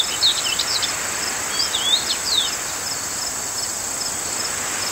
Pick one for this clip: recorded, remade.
recorded